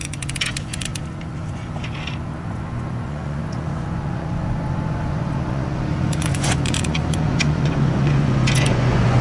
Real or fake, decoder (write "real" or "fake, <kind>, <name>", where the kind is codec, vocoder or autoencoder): fake, vocoder, Vocos